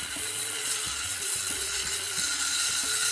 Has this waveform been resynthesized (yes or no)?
yes